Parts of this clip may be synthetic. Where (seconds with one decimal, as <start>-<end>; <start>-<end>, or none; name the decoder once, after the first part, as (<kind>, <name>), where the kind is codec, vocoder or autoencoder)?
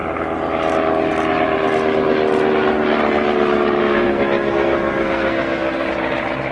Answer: 3.8-5.9 (codec, SNAC)